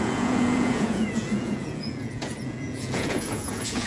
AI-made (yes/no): yes